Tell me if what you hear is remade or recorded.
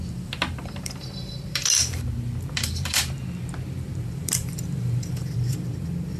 remade